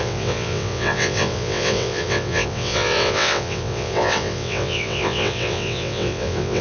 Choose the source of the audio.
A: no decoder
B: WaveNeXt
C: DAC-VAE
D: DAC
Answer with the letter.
B